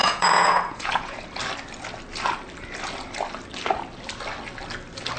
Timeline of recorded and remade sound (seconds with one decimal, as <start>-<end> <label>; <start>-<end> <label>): 0.0-1.2 remade; 1.2-5.2 recorded